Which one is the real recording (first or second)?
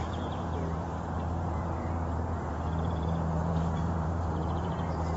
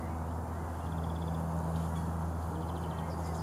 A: second